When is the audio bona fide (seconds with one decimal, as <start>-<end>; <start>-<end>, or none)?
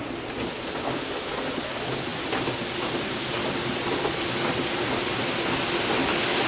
0.0-6.5